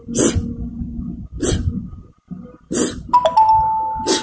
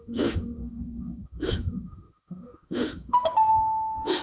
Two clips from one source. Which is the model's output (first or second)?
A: second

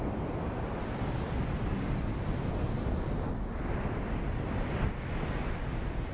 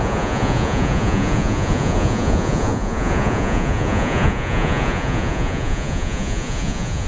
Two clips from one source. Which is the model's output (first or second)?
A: second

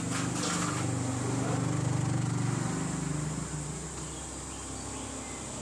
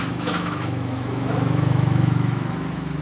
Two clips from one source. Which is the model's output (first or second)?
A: second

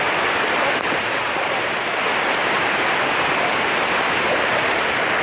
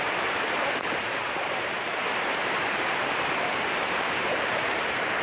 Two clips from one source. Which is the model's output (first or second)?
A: second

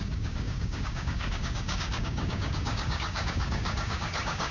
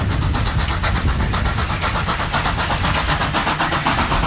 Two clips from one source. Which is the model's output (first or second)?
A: first